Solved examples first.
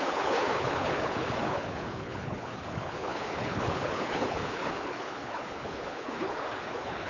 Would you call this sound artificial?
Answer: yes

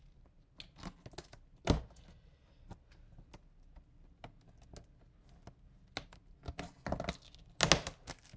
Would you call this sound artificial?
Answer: no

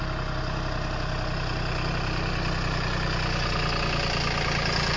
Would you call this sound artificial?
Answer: no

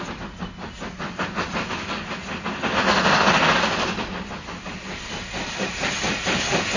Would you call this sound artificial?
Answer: no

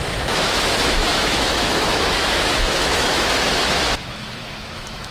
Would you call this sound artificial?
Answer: yes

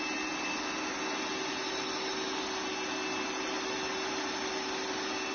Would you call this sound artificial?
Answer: no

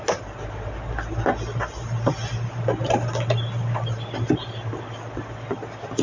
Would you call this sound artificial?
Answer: no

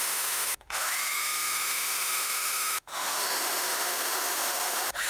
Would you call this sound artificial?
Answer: yes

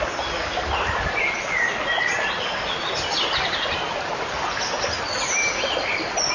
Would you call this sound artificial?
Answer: no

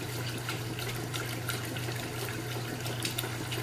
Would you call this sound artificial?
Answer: no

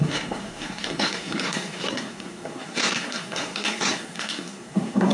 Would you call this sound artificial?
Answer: yes